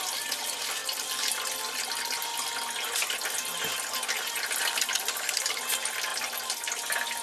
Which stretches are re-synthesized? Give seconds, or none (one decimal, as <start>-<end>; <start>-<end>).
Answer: 6.1-6.7